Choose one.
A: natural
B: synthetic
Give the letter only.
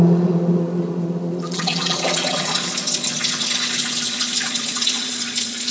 B